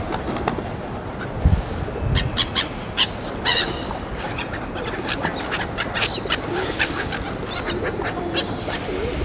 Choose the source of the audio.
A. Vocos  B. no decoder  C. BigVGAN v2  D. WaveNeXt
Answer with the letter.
B